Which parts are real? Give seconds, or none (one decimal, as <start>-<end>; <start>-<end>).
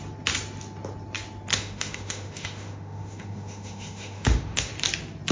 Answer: 0.0-1.5; 4.7-5.3